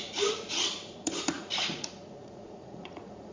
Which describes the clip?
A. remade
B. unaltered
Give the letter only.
A